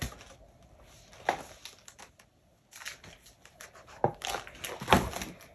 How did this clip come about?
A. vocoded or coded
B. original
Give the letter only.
B